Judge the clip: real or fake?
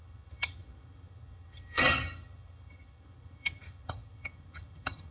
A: fake